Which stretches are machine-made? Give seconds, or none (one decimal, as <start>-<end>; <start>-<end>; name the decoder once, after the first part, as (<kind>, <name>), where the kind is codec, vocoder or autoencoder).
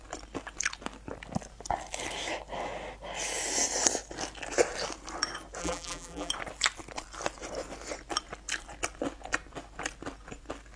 5.6-6.3 (vocoder, BigVGAN v2)